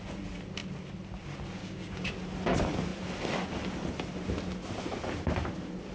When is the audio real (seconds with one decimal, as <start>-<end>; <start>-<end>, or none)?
0.0-1.6; 2.1-5.9